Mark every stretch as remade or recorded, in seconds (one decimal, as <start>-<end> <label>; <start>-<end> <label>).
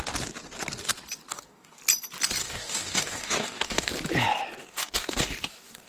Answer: 0.0-1.3 recorded; 1.3-1.8 remade; 1.8-2.4 recorded; 2.4-3.9 remade; 3.9-4.6 recorded; 4.6-5.9 remade